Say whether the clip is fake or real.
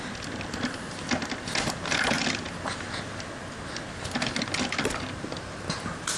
real